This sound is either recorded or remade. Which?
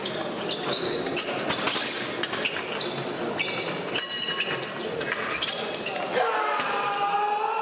recorded